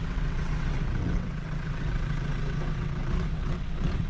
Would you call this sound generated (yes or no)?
yes